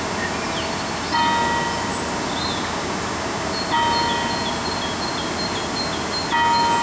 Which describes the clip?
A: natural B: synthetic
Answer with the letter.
A